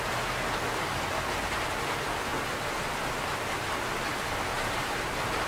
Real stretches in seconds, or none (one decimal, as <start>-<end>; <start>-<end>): 0.0-4.5